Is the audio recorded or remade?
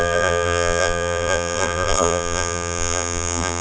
remade